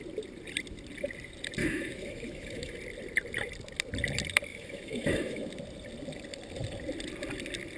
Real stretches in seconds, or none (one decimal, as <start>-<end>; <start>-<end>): 0.0-1.6; 2.7-4.5; 5.5-7.8